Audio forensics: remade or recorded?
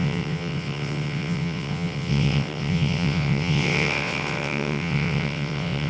remade